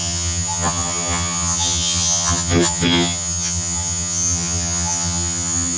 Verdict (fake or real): fake